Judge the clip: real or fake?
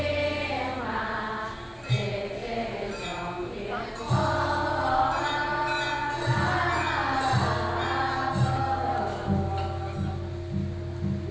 real